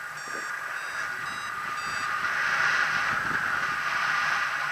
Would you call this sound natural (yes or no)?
yes